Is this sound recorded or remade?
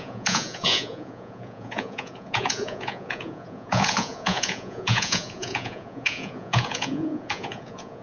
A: remade